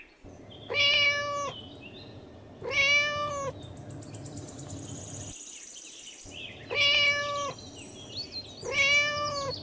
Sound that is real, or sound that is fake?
real